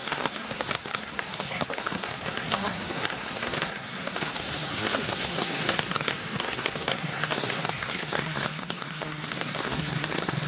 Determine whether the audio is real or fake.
fake